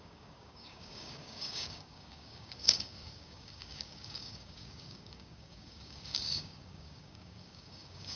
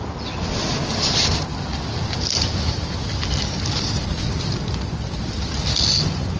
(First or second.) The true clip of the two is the second